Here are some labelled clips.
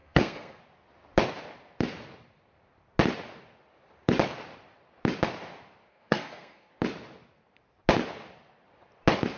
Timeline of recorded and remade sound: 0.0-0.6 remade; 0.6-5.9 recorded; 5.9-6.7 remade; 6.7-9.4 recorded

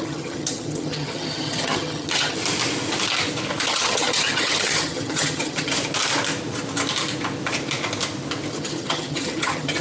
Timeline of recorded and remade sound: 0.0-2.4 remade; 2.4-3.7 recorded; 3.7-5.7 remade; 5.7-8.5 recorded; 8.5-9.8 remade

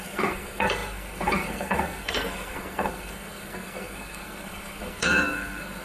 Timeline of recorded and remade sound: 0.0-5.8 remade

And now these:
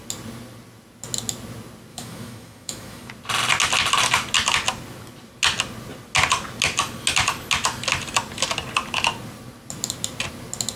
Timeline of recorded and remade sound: 0.0-1.9 recorded; 1.9-3.1 remade; 3.1-10.8 recorded

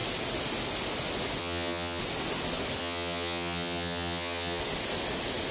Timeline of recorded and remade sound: 0.0-1.4 recorded; 1.4-2.0 remade; 2.0-2.8 recorded; 2.8-4.6 remade; 4.6-5.5 recorded

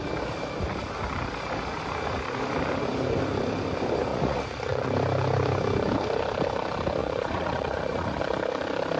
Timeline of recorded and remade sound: 0.0-4.1 recorded; 4.1-4.9 remade; 4.9-7.0 recorded; 7.0-8.2 remade; 8.2-9.0 recorded

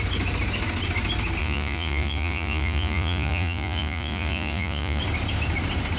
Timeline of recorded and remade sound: 0.0-1.4 recorded; 1.4-5.0 remade; 5.0-6.0 recorded